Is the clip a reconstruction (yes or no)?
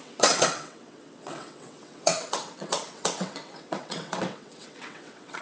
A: yes